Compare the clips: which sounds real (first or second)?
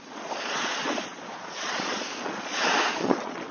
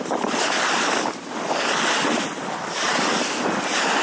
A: second